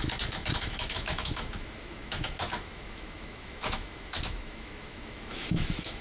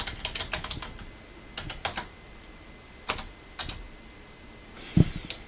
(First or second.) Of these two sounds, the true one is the second